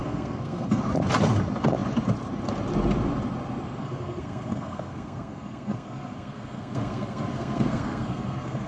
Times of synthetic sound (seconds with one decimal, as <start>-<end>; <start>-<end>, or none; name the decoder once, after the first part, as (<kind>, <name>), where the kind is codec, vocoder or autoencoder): 0.0-0.8 (codec, SNAC); 3.8-8.7